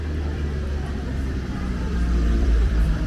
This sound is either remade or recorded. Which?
remade